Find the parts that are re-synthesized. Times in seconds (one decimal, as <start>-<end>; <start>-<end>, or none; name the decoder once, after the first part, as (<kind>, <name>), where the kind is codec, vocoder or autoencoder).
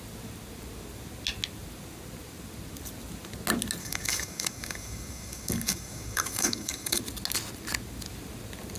3.8-7.0 (codec, DAC)